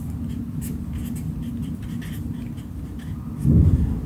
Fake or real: real